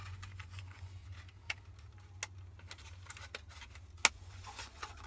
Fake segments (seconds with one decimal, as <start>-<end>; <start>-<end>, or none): 0.0-1.0; 4.1-5.1